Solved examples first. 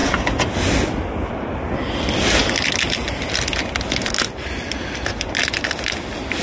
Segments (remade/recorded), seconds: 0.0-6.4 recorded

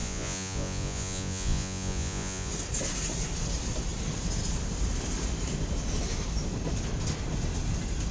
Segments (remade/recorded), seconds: 0.0-2.5 remade; 2.5-8.1 recorded

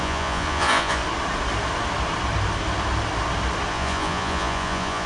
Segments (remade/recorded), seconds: 0.0-1.0 remade; 1.0-3.7 recorded; 3.7-5.1 remade

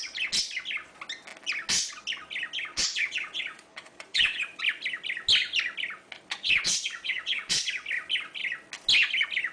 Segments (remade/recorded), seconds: 0.0-2.7 recorded; 2.7-4.6 remade; 4.6-6.3 recorded; 6.3-7.7 remade; 7.7-9.5 recorded

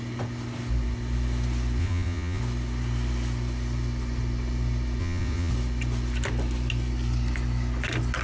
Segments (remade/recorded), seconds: 0.0-1.8 recorded; 1.8-2.4 remade; 2.4-5.0 recorded; 5.0-5.5 remade; 5.5-8.2 recorded

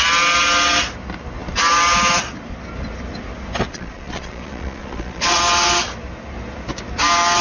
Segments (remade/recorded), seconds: 0.0-3.7 recorded; 3.7-5.4 remade; 5.4-7.4 recorded

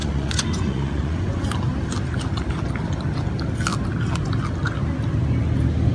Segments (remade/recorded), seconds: 0.0-1.4 remade; 1.4-5.9 recorded

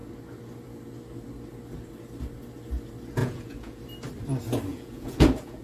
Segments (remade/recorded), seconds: 0.0-3.2 recorded; 3.2-3.8 remade; 3.8-4.7 recorded; 4.7-5.6 remade